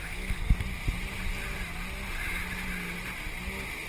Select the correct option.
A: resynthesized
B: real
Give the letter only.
B